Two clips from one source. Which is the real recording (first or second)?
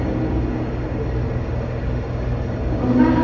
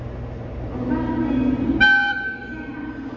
second